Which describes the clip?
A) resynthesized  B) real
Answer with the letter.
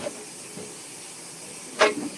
B